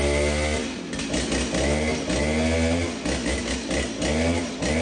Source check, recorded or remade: recorded